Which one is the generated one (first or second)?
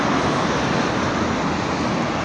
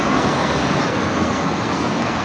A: second